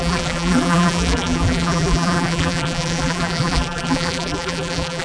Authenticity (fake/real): fake